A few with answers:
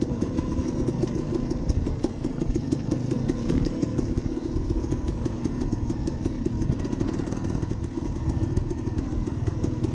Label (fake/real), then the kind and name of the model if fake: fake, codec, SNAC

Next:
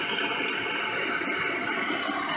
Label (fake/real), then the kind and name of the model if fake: real